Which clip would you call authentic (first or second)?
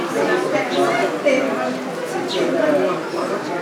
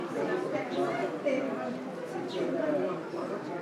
first